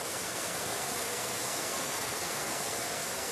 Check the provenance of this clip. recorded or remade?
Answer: remade